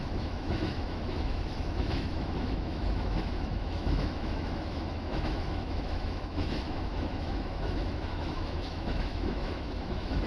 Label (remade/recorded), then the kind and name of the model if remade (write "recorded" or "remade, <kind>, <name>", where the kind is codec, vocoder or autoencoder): remade, autoencoder, DAC-VAE